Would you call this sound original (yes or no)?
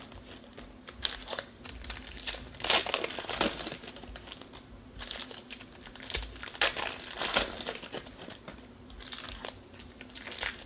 yes